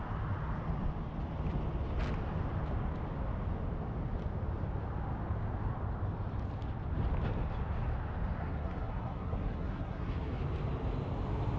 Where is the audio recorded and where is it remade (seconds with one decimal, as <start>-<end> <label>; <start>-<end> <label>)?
0.0-8.4 recorded; 8.4-10.3 remade; 10.3-11.6 recorded